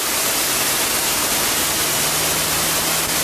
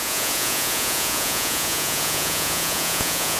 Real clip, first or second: first